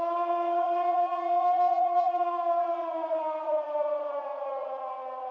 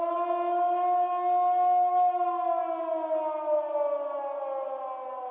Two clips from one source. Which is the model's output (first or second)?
first